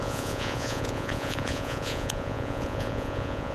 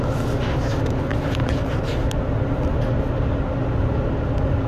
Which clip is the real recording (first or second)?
second